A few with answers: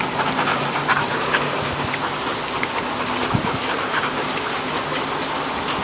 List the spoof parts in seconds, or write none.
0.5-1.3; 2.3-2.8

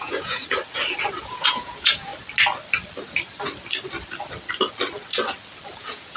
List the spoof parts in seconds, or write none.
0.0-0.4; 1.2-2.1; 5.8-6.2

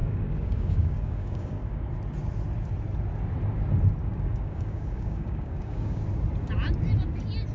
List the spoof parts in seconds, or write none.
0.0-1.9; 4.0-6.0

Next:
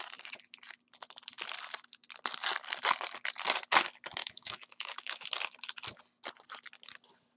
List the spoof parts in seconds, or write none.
4.2-5.3

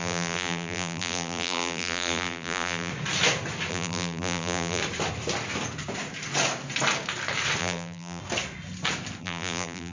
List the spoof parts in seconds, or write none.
0.0-2.9; 3.7-4.8; 7.6-8.2; 9.2-9.9

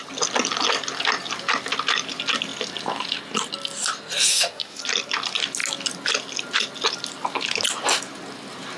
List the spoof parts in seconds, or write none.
4.3-4.8